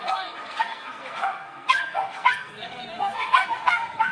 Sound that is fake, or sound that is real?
fake